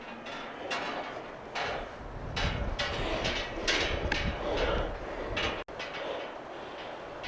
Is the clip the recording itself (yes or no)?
yes